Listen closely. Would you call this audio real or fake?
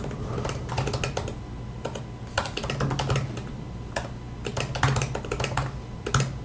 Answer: real